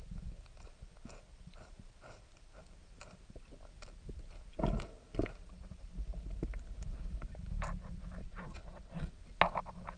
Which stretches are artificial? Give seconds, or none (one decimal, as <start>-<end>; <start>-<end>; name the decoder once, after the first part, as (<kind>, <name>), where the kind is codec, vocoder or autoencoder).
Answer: 8.2-9.1 (vocoder, Vocos)